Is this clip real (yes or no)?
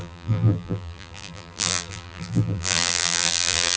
no